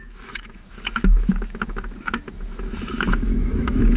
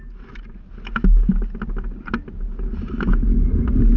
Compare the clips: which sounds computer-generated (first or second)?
first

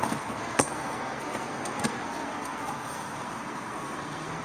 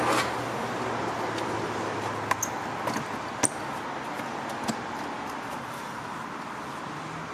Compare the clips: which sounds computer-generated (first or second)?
first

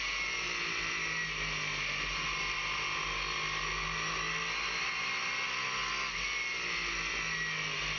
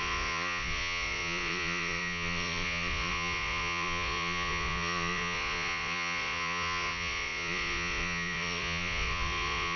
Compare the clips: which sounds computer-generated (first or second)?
second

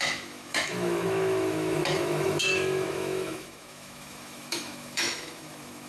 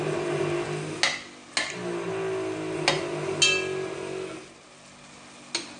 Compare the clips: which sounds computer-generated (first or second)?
first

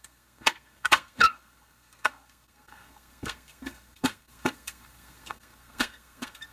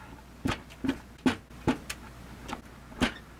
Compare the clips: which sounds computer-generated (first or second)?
first